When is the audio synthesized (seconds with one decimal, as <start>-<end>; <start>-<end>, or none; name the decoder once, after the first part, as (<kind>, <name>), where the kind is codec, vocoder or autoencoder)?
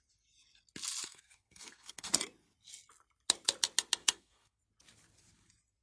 1.0-2.1 (codec, SNAC); 4.0-4.6